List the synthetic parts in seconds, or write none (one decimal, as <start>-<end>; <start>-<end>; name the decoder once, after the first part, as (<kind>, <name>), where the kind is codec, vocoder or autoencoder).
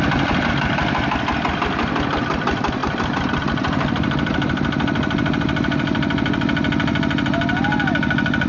none